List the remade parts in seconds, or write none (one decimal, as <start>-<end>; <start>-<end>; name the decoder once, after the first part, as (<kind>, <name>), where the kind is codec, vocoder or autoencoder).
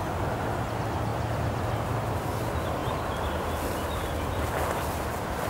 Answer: none